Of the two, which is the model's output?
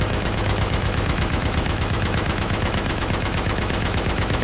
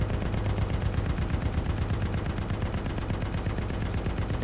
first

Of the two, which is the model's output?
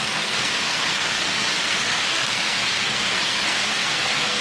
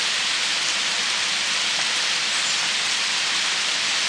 first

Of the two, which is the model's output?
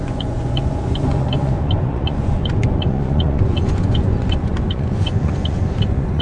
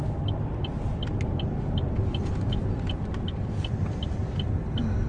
first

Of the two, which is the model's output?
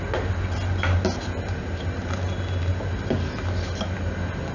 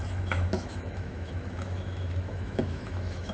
second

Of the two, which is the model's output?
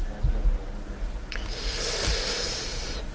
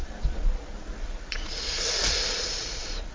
second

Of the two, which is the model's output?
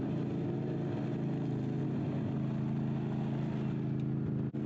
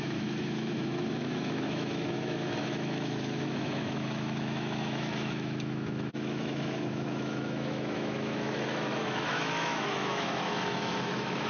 second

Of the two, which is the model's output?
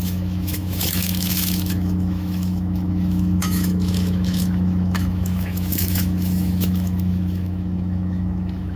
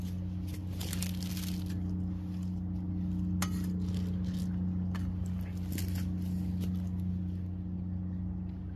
first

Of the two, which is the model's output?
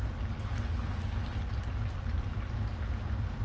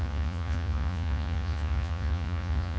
second